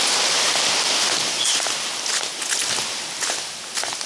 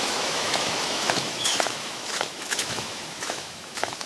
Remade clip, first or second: second